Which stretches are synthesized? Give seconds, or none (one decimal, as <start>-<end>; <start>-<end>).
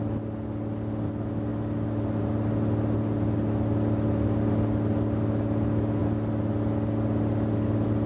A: none